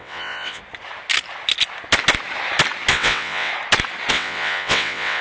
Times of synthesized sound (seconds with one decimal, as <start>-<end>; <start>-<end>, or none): 0.0-0.6; 2.9-3.5; 4.1-5.2